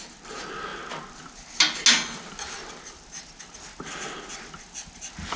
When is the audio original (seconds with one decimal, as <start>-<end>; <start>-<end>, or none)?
0.0-5.4